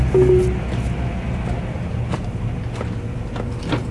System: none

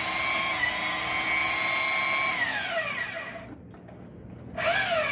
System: none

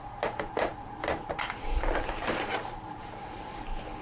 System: vocoder, BigVGAN v2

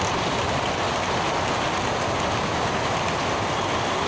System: none